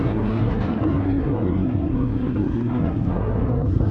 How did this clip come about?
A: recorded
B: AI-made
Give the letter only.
B